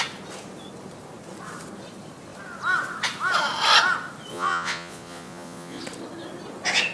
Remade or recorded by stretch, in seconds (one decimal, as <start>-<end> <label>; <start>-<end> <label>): 0.0-4.3 recorded; 4.3-5.8 remade; 5.8-6.9 recorded